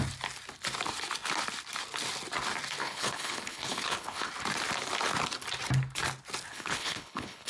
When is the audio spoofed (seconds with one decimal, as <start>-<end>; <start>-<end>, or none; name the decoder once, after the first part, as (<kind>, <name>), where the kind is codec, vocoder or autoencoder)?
2.8-4.3 (codec, HILCodec); 6.5-7.5